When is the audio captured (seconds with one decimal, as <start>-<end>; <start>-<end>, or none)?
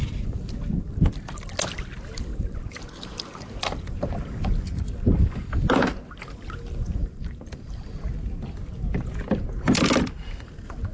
0.0-2.3; 4.1-7.0; 8.0-10.9